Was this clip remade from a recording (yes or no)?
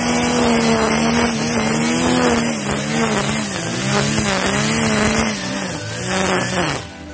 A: no